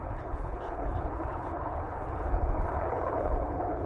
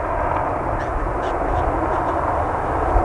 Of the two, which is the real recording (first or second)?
second